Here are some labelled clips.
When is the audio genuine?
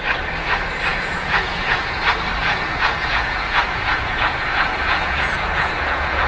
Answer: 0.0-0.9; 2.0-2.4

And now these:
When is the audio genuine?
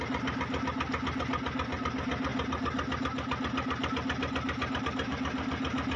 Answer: 0.0-6.0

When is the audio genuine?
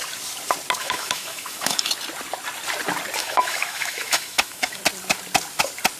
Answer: 0.0-0.8; 1.9-3.2; 4.8-6.0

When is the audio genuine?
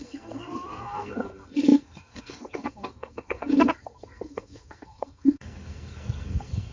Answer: none